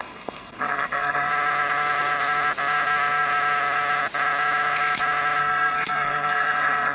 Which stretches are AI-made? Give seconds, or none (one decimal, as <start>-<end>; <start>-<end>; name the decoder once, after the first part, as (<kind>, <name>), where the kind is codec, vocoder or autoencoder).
0.0-1.3 (codec, SNAC); 5.4-6.9

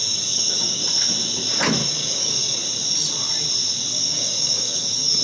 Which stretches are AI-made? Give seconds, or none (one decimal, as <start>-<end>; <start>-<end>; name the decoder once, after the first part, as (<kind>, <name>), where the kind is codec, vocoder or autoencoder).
0.0-0.8 (codec, DAC); 1.8-2.6; 3.9-5.2

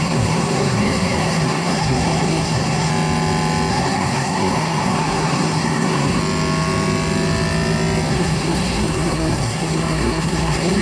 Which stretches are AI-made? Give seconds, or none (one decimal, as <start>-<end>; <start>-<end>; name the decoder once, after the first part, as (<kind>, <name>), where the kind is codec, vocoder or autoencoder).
0.0-2.9 (codec, SNAC); 3.7-6.2; 8.1-10.8